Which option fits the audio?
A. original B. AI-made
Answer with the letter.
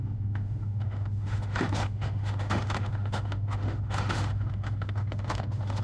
B